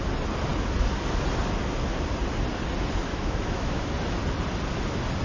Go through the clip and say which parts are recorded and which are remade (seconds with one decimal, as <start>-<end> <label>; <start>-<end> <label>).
0.0-3.1 recorded; 3.1-3.9 remade; 3.9-5.2 recorded